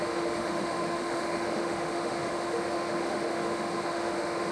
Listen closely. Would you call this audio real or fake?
fake